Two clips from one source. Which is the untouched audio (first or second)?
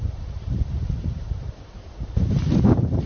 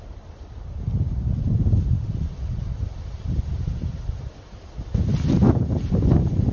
second